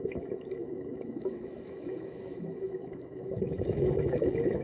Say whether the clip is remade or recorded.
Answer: remade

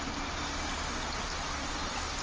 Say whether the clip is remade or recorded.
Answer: recorded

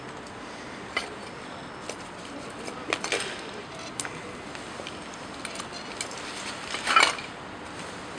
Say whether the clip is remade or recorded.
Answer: recorded